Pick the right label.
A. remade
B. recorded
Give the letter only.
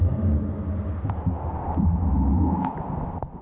B